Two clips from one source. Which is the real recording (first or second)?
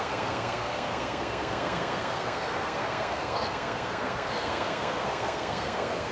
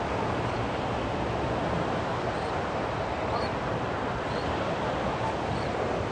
second